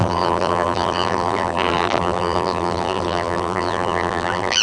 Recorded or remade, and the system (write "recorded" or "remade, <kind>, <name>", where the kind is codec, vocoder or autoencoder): remade, vocoder, BigVGAN v2